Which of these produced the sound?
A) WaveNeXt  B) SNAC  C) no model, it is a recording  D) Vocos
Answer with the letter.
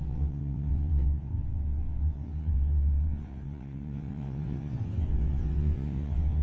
A